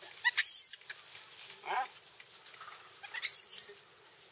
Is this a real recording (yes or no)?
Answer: yes